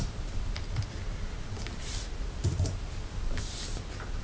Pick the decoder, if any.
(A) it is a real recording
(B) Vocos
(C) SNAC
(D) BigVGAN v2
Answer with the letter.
D